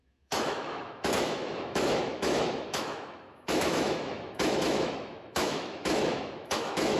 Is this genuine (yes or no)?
no